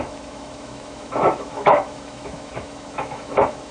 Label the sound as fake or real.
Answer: fake